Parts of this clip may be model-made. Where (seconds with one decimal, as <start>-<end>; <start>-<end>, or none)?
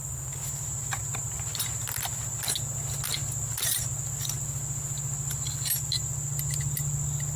none